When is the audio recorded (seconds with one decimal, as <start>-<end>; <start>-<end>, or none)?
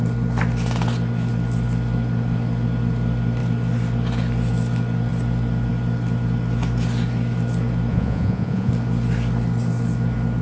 0.0-7.9; 8.7-10.4